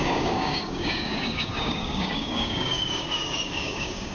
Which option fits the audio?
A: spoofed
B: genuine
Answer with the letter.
A